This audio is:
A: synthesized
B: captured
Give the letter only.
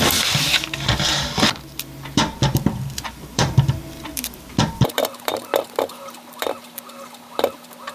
A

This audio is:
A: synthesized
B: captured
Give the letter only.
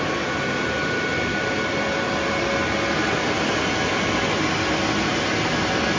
B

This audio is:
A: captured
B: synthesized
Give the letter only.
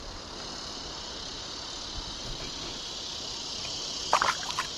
A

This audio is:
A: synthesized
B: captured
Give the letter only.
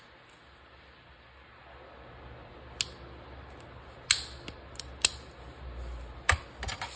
B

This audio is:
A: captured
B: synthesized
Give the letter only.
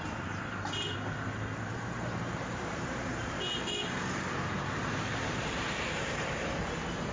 B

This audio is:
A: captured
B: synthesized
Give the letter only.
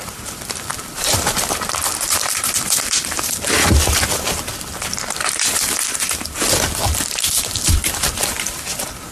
B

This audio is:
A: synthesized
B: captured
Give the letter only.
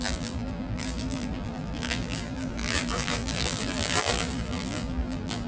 A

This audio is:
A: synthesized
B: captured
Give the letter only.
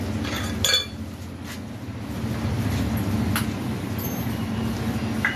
B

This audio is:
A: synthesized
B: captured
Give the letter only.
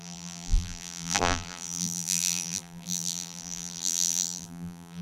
A